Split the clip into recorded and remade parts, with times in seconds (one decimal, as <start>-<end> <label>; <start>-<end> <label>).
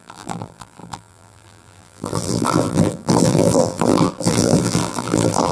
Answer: 0.0-5.5 remade